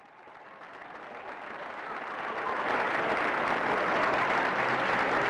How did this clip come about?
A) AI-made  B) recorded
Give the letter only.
B